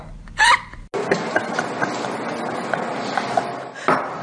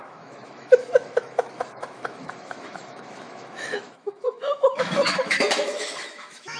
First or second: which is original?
first